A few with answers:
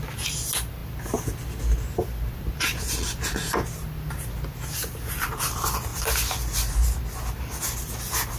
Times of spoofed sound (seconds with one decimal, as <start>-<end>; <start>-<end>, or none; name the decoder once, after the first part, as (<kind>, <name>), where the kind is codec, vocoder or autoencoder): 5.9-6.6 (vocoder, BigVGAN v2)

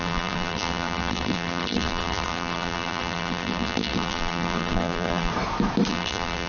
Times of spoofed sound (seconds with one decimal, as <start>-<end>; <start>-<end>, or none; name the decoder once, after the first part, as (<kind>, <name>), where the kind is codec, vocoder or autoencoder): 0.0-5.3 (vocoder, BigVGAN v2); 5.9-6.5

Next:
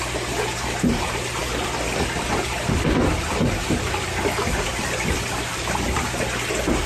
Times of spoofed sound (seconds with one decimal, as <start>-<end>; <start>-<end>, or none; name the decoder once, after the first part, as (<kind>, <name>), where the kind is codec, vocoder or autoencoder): 5.5-6.0 (vocoder, BigVGAN v2)

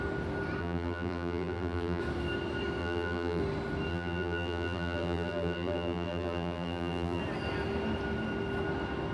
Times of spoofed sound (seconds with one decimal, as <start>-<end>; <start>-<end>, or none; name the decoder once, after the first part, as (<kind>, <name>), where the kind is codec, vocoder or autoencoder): 0.6-2.0 (vocoder, BigVGAN v2); 2.8-3.4; 3.9-7.2

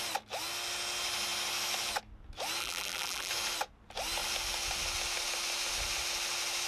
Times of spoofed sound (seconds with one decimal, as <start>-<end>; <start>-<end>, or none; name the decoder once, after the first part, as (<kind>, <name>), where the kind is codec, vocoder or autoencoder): 2.6-3.3 (vocoder, BigVGAN v2)

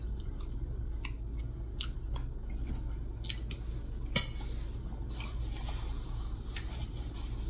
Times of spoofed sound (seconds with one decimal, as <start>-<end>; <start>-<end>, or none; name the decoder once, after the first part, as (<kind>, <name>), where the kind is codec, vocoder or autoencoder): 0.0-0.8 (vocoder, BigVGAN v2); 5.3-7.5